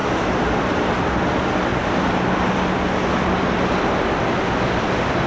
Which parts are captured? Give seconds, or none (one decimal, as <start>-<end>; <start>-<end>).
0.0-5.3